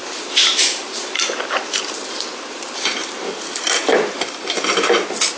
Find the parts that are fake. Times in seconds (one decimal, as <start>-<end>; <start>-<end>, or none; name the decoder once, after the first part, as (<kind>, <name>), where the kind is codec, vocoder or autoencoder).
0.0-5.4 (vocoder, BigVGAN v2)